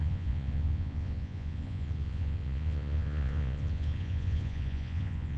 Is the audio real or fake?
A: fake